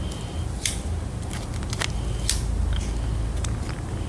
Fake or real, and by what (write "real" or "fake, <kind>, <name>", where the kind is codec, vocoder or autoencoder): real